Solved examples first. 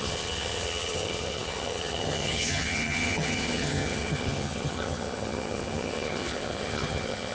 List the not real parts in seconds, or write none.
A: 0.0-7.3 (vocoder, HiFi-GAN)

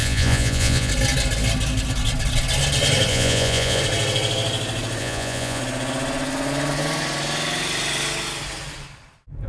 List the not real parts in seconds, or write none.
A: 0.0-0.9 (vocoder, Vocos); 3.1-3.8; 5.0-5.6

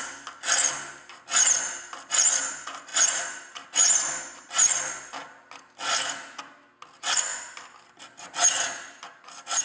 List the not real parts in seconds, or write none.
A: none